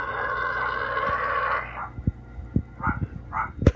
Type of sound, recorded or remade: recorded